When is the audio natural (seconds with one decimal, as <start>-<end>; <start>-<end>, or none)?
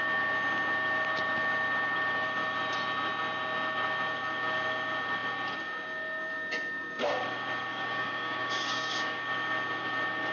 0.0-7.7; 9.2-10.3